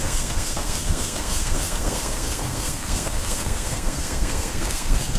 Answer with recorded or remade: remade